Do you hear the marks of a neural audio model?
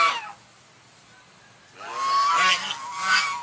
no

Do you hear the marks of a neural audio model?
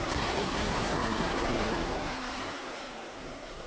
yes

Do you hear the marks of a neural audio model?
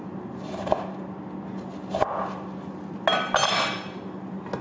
no